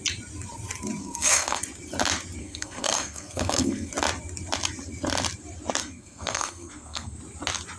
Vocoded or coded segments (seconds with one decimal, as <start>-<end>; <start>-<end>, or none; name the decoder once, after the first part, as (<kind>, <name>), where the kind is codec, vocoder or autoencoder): 1.0-1.6 (codec, SNAC); 2.4-3.9; 5.8-7.2